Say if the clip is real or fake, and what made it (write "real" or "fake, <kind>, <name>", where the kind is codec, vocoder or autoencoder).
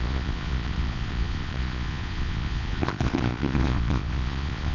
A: fake, vocoder, Vocos